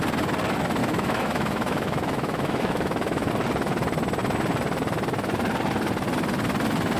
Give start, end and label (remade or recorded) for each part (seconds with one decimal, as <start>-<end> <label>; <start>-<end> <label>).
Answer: 0.0-0.8 recorded; 0.8-3.3 remade; 3.3-7.0 recorded